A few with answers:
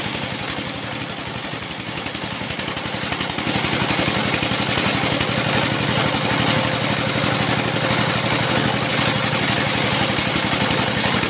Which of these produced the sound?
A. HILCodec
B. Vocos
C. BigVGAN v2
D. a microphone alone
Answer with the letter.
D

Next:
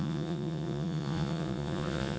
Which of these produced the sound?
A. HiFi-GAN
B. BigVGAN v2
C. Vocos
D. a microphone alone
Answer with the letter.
C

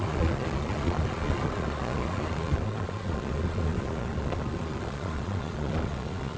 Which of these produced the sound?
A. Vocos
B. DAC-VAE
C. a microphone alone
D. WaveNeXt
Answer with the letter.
A